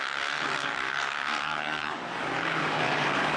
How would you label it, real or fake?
fake